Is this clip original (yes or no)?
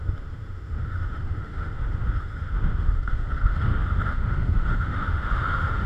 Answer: no